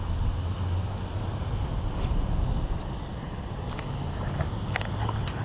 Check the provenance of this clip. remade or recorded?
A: recorded